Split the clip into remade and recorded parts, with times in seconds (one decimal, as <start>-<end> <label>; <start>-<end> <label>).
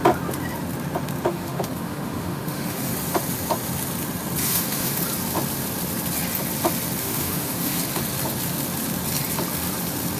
0.0-1.3 recorded; 1.3-2.9 remade; 2.9-4.4 recorded; 4.4-5.0 remade; 5.0-7.0 recorded; 7.0-7.8 remade; 7.8-10.2 recorded